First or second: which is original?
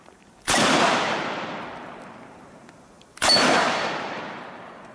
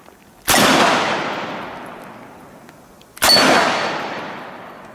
second